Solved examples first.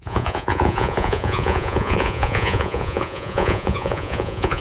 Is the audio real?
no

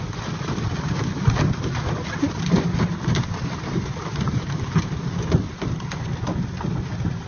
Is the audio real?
yes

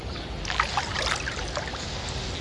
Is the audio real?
yes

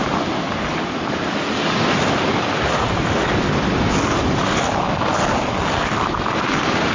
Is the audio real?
yes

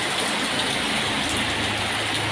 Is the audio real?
yes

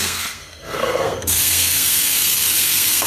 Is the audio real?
no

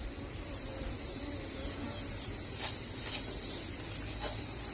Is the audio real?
yes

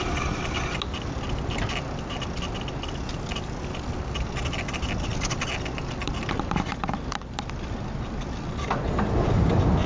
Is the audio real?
yes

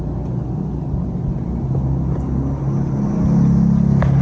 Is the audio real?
yes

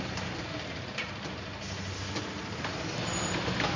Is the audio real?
yes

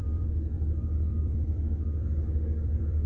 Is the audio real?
no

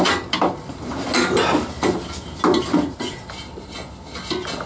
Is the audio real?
yes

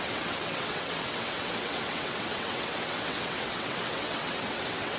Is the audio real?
no